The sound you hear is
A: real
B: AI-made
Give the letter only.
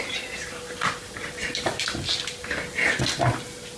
A